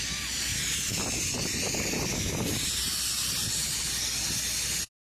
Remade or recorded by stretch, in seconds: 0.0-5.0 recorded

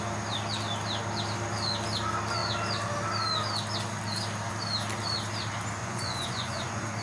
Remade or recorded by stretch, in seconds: 0.0-5.8 recorded; 5.8-7.0 remade

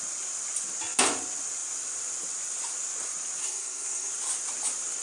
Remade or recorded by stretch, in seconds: 0.0-3.4 recorded; 3.4-4.1 remade; 4.1-5.0 recorded

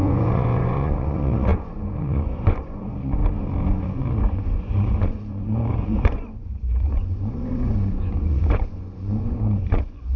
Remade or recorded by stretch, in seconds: 0.0-3.2 remade; 3.2-3.7 recorded; 3.7-10.2 remade